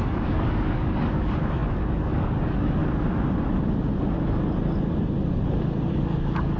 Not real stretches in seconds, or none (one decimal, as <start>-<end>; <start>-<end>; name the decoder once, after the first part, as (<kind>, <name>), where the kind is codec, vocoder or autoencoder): 0.0-2.8 (codec, DAC); 5.9-6.6